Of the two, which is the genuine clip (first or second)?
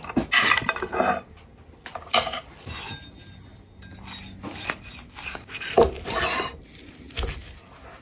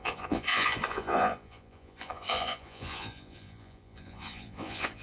first